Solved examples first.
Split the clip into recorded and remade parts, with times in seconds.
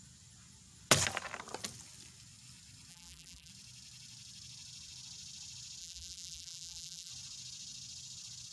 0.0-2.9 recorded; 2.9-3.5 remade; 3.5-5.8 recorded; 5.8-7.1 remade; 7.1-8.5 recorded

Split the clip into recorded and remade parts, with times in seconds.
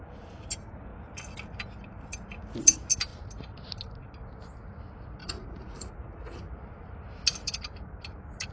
0.0-5.2 recorded; 5.2-6.1 remade; 6.1-8.5 recorded